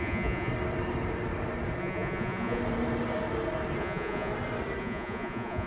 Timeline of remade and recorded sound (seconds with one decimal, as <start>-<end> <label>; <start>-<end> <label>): 0.0-0.5 remade; 0.5-1.8 recorded; 1.8-2.6 remade; 2.6-3.8 recorded; 3.8-4.3 remade; 4.3-4.8 recorded; 4.8-5.7 remade